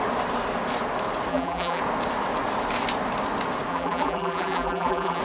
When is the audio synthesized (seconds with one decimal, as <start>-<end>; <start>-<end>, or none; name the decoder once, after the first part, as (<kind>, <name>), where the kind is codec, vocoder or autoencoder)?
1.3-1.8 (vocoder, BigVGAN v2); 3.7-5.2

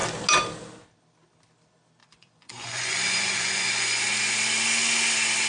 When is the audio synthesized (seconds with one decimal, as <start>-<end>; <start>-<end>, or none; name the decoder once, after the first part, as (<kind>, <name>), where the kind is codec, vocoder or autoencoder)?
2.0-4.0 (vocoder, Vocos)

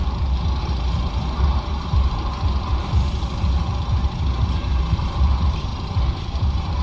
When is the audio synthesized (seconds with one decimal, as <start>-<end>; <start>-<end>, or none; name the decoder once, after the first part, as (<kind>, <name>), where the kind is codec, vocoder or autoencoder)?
0.6-1.7 (vocoder, BigVGAN v2); 3.6-6.8

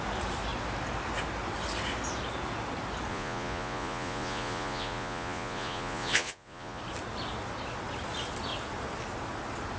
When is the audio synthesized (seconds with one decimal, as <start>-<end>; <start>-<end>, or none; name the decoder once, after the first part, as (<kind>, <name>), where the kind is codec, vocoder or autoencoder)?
3.1-6.8 (vocoder, Vocos)